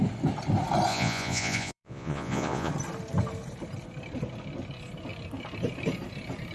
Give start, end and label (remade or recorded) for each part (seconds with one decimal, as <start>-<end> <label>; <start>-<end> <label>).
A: 0.0-0.9 recorded; 0.9-2.7 remade; 2.7-6.5 recorded